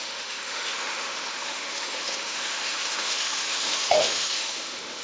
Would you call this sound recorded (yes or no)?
no